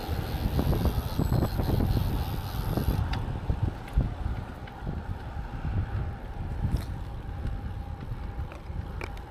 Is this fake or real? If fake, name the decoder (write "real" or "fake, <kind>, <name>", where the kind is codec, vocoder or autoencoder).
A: real